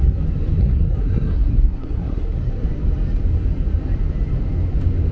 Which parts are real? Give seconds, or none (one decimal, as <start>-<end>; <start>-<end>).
0.0-0.6; 2.5-5.1